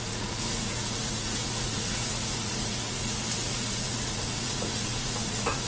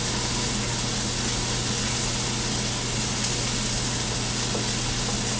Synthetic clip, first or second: first